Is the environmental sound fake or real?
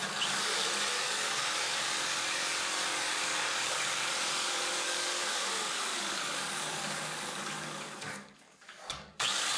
fake